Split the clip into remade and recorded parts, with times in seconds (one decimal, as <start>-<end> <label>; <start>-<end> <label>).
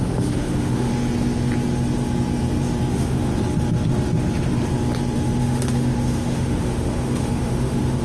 0.0-0.9 remade; 0.9-2.9 recorded; 2.9-3.3 remade; 3.3-5.4 recorded; 5.4-8.0 remade